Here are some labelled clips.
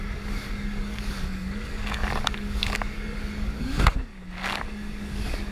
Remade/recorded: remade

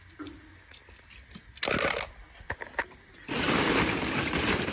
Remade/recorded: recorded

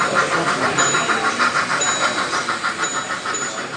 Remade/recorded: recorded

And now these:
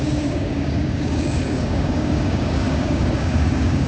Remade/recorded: remade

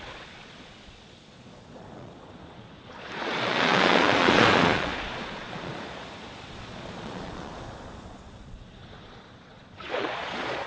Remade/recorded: remade